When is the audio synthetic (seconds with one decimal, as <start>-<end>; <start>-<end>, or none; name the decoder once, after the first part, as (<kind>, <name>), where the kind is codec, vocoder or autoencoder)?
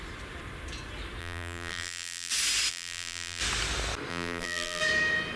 1.2-2.3 (vocoder, BigVGAN v2); 2.7-3.4; 4.1-4.8